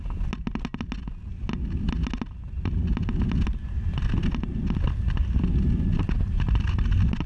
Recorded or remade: recorded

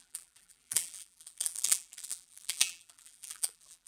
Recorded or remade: remade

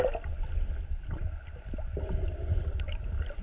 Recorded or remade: recorded